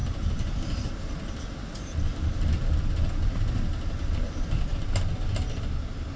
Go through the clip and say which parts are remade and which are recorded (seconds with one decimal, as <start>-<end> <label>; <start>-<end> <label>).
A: 0.0-6.2 recorded